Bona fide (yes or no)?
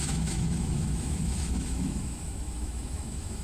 no